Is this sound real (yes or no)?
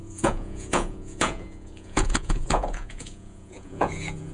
no